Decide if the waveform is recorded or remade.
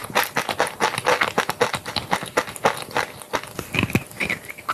recorded